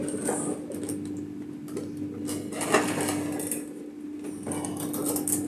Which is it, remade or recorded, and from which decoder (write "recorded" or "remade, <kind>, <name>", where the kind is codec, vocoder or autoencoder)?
recorded